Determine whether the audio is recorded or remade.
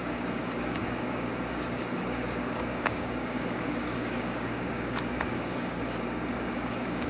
remade